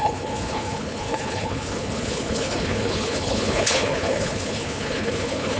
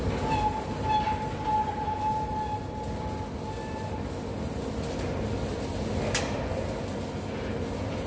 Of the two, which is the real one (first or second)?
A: second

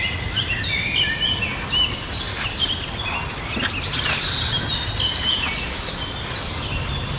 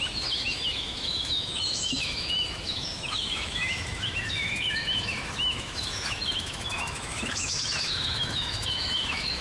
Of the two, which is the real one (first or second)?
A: first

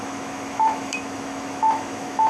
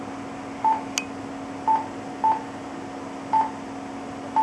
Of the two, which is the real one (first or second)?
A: second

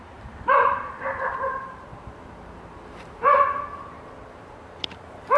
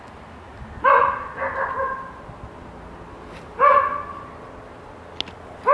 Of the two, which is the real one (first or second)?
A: second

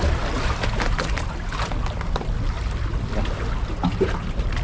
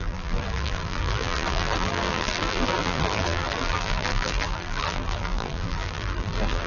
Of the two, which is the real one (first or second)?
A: first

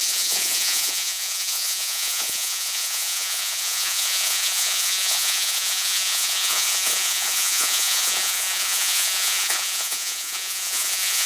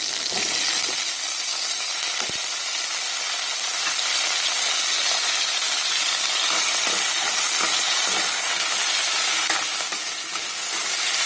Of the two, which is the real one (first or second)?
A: second